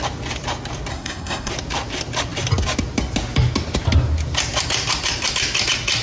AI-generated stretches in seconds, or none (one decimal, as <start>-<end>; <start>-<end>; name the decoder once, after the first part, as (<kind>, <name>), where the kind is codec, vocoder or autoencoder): 0.9-1.5 (codec, SNAC)